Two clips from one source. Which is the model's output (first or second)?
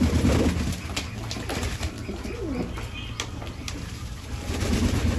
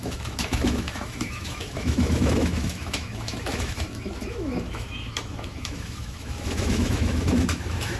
second